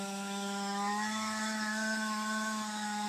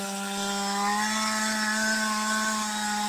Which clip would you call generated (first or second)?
first